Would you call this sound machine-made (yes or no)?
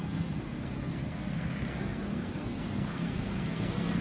yes